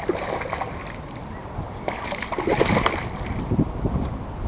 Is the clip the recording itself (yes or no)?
yes